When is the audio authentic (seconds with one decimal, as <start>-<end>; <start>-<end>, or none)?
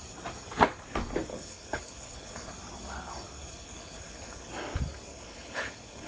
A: 0.0-1.3; 2.5-3.4; 4.5-5.1